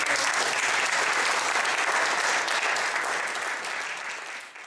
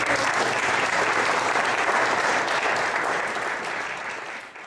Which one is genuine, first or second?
first